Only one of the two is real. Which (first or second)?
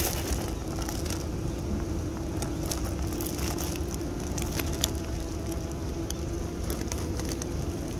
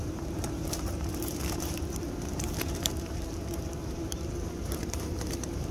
first